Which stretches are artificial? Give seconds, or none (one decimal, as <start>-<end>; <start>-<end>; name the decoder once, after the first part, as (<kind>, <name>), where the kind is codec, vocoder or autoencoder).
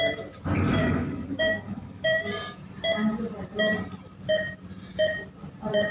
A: 0.8-2.6 (codec, DAC)